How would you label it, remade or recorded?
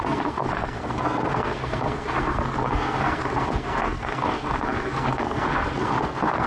remade